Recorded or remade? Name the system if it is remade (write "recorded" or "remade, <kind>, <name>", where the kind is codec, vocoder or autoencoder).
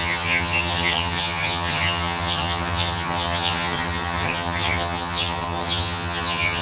remade, vocoder, HiFi-GAN